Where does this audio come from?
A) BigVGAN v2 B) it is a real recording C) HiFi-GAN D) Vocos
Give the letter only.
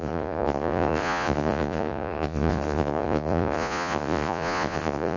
D